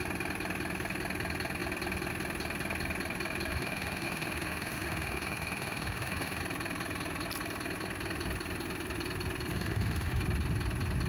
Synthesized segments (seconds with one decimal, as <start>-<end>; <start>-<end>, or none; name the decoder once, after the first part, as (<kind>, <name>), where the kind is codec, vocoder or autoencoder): 3.5-6.4 (autoencoder, DAC-VAE); 9.5-10.2